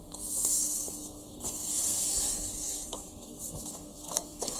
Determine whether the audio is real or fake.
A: fake